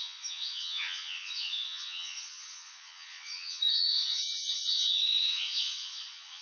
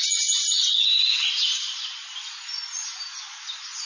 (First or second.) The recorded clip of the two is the second